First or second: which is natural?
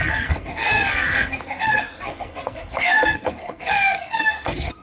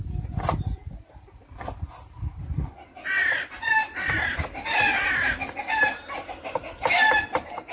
second